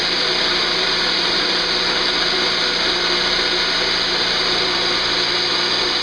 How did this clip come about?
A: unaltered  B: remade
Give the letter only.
A